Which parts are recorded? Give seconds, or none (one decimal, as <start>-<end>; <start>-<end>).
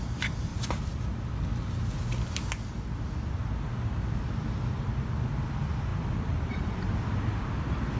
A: 0.0-8.0